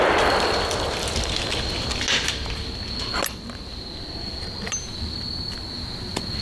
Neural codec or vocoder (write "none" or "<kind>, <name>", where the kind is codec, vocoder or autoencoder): none